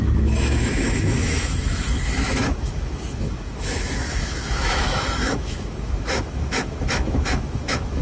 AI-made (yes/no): yes